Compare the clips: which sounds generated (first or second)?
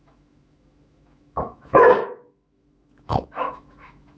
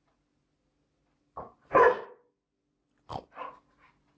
first